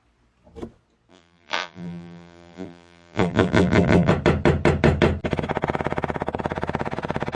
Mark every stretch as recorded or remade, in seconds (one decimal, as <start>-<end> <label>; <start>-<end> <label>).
0.0-1.1 recorded; 1.1-4.1 remade; 4.1-7.3 recorded